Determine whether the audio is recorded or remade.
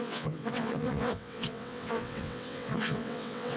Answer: remade